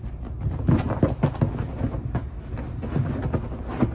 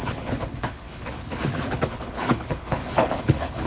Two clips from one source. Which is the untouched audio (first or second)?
first